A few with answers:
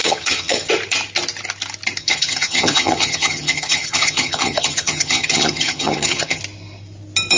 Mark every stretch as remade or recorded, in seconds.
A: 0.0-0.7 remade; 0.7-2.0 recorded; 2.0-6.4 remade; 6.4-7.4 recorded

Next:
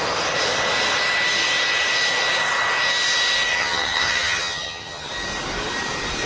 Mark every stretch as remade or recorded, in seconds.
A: 0.0-3.5 recorded; 3.5-5.1 remade; 5.1-6.3 recorded

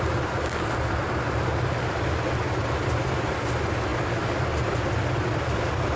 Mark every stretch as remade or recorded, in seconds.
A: 0.0-6.0 recorded

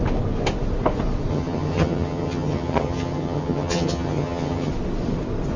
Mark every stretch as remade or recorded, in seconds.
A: 0.0-1.3 recorded; 1.3-4.7 remade; 4.7-5.6 recorded